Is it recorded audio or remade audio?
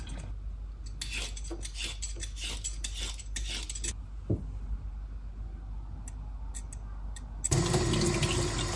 recorded